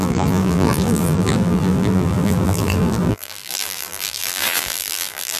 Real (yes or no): no